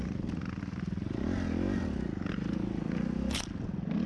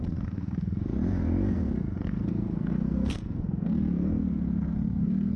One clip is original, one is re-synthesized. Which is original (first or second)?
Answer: first